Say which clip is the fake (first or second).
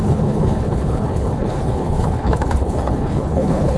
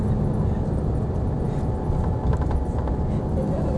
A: first